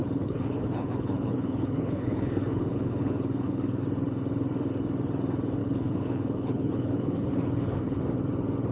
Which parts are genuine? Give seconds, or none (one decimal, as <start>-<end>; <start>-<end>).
3.8-5.6; 8.0-8.7